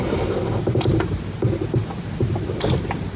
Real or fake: real